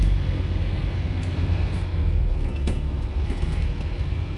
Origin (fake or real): fake